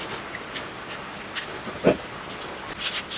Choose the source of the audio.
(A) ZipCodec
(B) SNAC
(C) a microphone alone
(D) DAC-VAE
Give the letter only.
C